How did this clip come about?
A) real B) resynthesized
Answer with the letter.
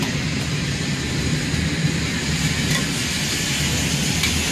A